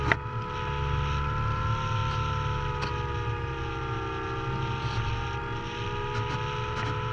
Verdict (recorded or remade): recorded